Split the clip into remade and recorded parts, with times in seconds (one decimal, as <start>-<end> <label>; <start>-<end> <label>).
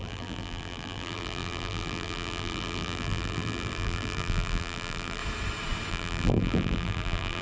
0.0-5.2 remade; 5.2-5.9 recorded; 5.9-7.4 remade